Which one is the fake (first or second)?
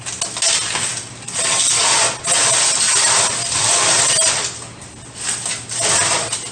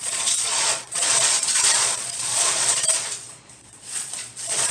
second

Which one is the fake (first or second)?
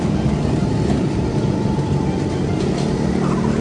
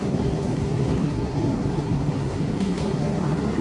second